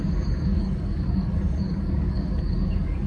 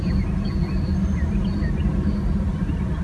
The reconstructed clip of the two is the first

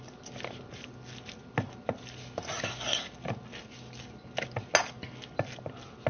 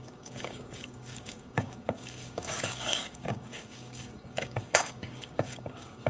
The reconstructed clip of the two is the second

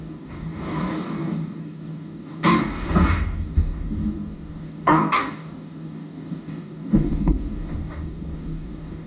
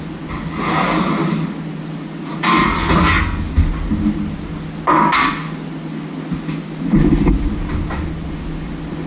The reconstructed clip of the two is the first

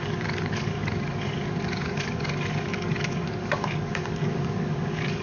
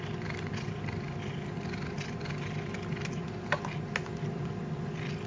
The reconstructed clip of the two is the first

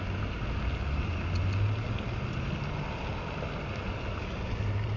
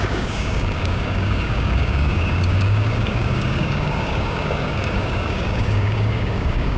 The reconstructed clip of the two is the second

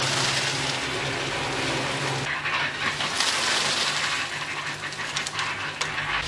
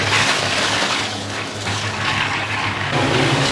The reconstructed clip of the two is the second